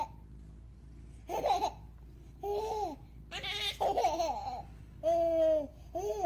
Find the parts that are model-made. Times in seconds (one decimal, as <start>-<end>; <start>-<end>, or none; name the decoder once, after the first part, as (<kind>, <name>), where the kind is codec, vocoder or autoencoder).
none